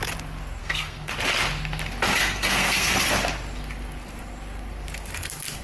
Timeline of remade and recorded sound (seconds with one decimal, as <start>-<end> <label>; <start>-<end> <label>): 0.0-0.6 recorded; 0.6-1.1 remade; 1.1-2.2 recorded; 2.2-2.9 remade; 2.9-5.6 recorded